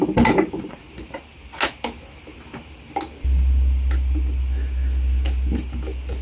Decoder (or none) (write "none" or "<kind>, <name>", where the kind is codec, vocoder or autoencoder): none